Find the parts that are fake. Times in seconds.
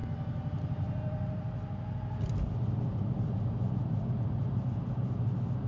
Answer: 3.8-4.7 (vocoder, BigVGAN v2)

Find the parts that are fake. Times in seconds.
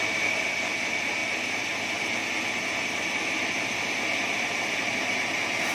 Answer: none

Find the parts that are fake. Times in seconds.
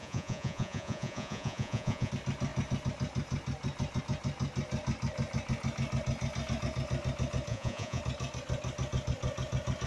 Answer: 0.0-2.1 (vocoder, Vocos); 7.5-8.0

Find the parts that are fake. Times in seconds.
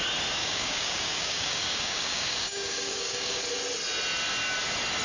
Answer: 0.4-3.4 (codec, DAC)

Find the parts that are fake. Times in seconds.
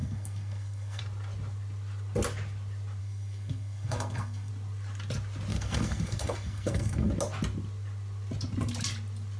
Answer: 0.0-1.0 (codec, SNAC); 3.0-4.5; 5.5-7.1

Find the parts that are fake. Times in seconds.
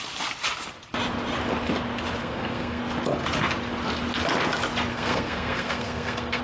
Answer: 2.2-2.8 (codec, SNAC); 4.9-6.4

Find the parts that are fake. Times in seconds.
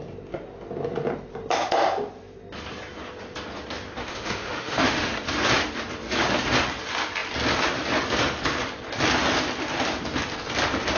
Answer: 4.0-5.1 (autoencoder, DAC-VAE)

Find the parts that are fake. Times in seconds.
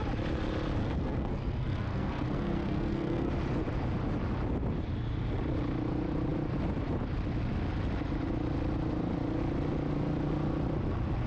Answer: 0.8-3.3 (codec, SNAC)